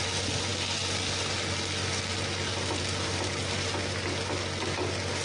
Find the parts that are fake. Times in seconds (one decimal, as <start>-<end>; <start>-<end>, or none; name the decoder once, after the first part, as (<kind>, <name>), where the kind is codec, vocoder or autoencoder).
none